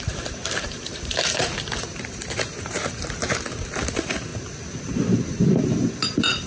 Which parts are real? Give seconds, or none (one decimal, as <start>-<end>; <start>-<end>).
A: none